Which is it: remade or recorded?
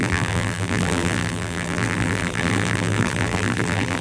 remade